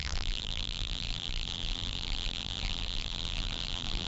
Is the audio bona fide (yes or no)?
no